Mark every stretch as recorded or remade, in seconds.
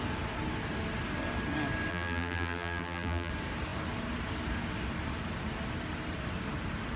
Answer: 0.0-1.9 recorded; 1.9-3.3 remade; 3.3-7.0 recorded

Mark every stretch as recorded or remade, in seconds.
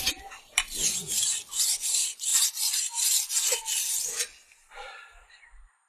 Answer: 0.0-5.9 recorded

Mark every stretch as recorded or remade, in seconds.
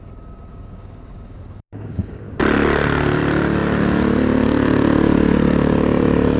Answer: 0.0-0.5 recorded; 0.5-2.4 remade; 2.4-6.4 recorded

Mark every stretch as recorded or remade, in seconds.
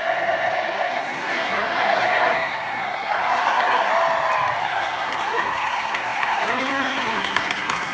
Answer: 0.0-3.9 remade; 3.9-4.6 recorded; 4.6-7.9 remade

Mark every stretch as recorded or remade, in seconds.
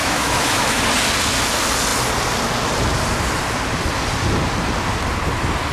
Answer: 0.0-0.8 remade; 0.8-5.7 recorded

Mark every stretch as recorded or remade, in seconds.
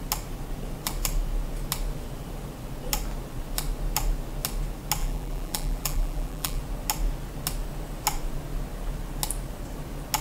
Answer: 0.0-5.0 recorded; 5.0-6.6 remade; 6.6-10.2 recorded